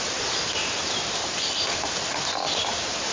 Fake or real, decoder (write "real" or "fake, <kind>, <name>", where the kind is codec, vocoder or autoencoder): real